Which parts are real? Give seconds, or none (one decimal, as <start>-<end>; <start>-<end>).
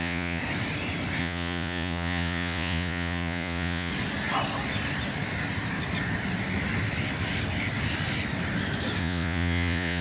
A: 0.4-1.2; 3.9-9.0